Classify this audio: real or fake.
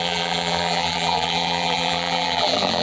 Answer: fake